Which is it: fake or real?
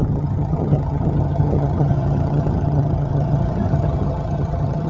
fake